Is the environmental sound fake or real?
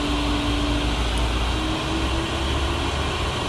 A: real